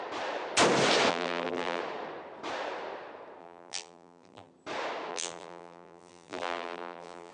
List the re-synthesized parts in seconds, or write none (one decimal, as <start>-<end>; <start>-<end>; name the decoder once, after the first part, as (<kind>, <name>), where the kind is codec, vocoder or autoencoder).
1.1-1.8 (vocoder, BigVGAN v2); 3.4-4.5; 5.1-7.3